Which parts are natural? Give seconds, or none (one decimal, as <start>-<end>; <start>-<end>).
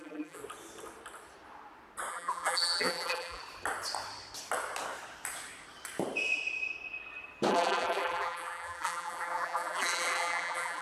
0.4-2.1; 3.4-7.5